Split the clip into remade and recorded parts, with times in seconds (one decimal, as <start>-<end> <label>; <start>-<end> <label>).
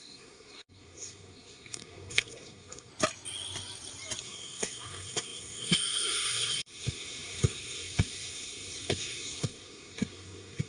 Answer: 0.0-2.9 remade; 2.9-4.2 recorded; 4.2-10.7 remade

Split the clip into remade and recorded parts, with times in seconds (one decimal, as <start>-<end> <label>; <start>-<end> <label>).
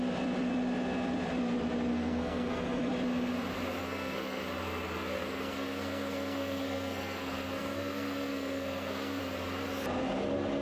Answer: 0.0-1.9 recorded; 1.9-2.9 remade; 2.9-3.8 recorded; 3.8-4.4 remade; 4.4-5.2 recorded; 5.2-9.2 remade; 9.2-10.6 recorded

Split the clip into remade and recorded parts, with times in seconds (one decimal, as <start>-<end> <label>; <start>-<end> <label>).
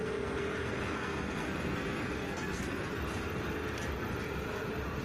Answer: 0.0-3.0 remade; 3.0-5.0 recorded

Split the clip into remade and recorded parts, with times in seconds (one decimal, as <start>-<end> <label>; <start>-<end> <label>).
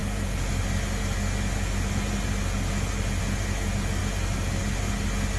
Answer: 0.0-5.4 recorded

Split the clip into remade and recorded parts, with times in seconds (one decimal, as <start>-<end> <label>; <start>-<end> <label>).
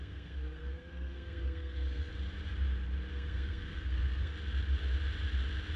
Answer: 0.0-2.1 remade; 2.1-3.1 recorded; 3.1-4.3 remade; 4.3-5.8 recorded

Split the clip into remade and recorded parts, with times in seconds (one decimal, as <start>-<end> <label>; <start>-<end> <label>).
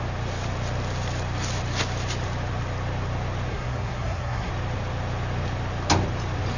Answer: 0.0-3.5 recorded; 3.5-4.5 remade; 4.5-6.6 recorded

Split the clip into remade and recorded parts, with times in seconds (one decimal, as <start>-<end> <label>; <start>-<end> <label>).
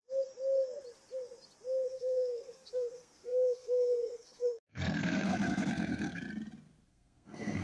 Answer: 0.0-1.9 recorded; 1.9-6.2 remade; 6.2-6.9 recorded; 6.9-7.6 remade